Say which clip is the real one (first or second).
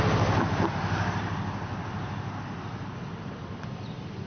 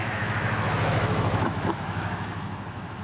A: first